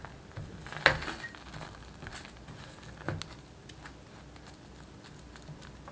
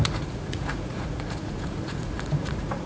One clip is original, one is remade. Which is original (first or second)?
first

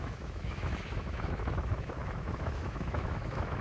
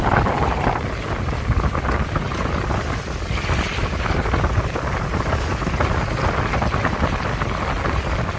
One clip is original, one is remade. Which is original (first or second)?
second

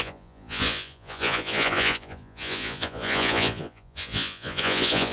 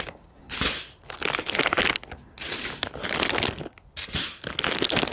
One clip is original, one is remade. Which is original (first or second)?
second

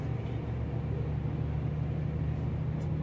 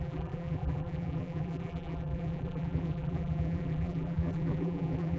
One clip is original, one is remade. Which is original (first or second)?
first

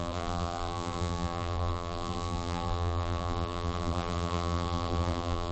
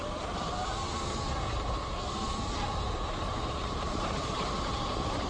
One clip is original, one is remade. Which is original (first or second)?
second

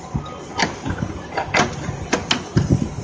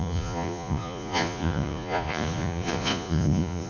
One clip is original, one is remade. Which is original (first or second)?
first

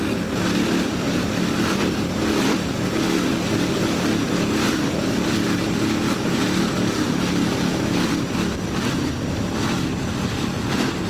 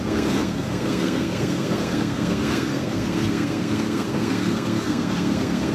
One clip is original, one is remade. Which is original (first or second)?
first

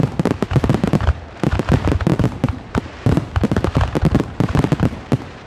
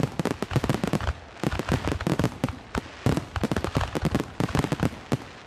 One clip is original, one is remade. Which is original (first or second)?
second